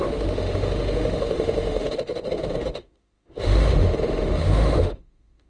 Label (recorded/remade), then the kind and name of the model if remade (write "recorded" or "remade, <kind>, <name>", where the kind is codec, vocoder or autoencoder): remade, autoencoder, DAC-VAE